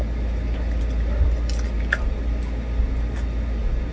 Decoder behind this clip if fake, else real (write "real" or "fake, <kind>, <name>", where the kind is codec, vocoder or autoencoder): real